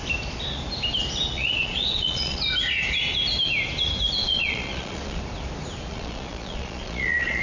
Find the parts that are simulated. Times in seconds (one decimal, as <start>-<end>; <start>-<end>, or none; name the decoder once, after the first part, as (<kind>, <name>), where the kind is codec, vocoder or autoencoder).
1.4-2.4 (vocoder, Vocos); 4.2-5.2; 5.9-7.4